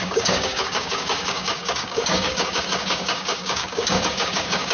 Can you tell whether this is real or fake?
fake